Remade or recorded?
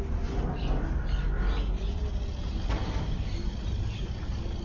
recorded